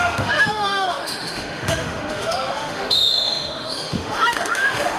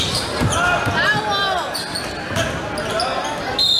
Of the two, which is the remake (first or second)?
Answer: first